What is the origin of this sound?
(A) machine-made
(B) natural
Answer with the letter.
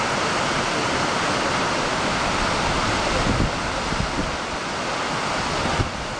B